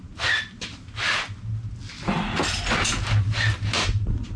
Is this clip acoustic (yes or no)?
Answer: yes